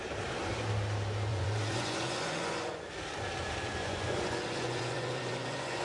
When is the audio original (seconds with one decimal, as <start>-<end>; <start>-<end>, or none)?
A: 0.0-1.3; 2.8-3.8